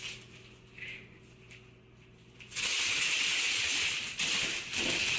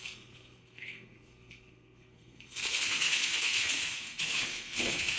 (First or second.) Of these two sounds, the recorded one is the first